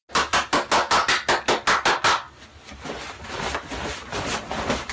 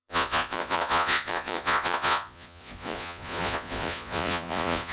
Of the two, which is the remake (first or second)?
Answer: second